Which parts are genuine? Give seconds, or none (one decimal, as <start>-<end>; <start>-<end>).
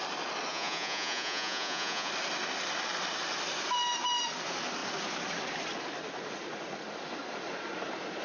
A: 0.0-0.5; 2.1-8.2